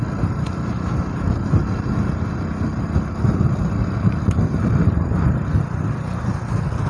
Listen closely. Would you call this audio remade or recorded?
recorded